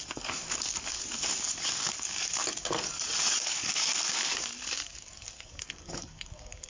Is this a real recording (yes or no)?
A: no